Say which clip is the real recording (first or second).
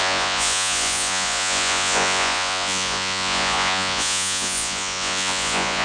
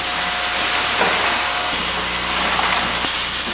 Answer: second